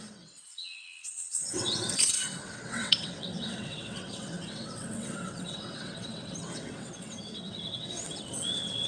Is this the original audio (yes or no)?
no